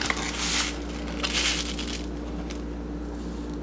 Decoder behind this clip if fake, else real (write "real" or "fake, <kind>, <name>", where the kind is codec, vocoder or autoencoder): real